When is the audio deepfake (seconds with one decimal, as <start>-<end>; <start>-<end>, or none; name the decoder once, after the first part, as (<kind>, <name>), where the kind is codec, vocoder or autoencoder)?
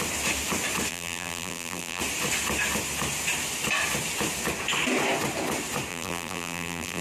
0.9-2.0 (vocoder, BigVGAN v2); 5.9-7.0